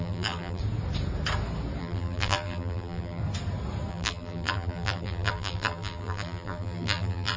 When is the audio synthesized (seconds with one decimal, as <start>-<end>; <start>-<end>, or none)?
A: 0.0-0.6; 1.8-3.2; 3.9-7.4